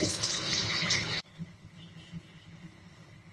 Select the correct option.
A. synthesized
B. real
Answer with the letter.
A